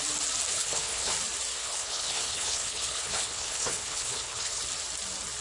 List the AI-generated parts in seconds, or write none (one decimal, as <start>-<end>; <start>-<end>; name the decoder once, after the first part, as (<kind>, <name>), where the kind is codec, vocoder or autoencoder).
0.5-1.1 (codec, HILCodec); 1.5-4.6